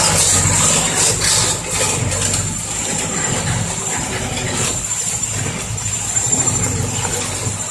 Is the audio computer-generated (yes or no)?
no